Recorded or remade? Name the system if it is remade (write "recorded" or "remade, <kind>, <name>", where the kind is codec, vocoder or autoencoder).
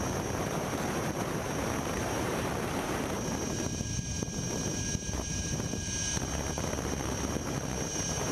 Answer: remade, vocoder, BigVGAN v2